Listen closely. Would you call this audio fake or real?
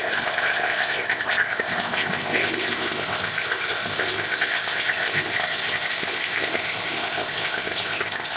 fake